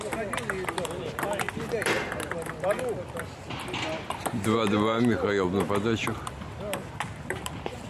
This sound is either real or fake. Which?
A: real